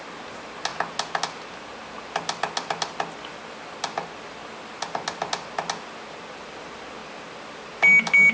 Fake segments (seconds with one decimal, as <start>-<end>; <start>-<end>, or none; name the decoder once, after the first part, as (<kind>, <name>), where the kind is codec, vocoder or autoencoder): none